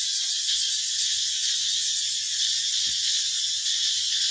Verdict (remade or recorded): recorded